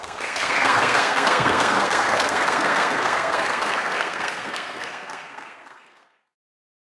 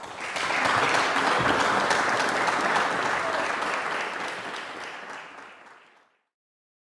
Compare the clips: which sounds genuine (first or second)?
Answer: second